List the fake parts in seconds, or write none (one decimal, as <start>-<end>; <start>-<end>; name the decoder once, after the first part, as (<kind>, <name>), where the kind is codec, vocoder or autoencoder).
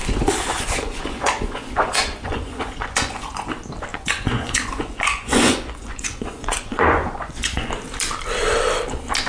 0.0-3.5 (vocoder, Vocos); 3.9-7.7